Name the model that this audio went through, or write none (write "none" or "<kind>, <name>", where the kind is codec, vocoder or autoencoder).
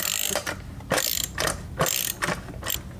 none